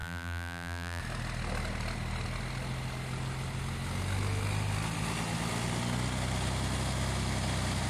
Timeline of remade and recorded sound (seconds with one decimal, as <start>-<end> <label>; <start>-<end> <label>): 0.0-1.0 remade; 1.0-7.9 recorded